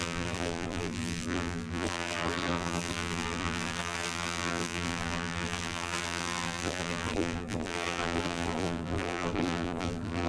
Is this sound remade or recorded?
remade